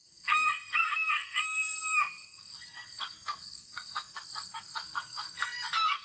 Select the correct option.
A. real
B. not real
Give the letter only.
B